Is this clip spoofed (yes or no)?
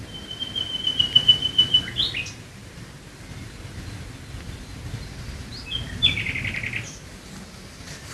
no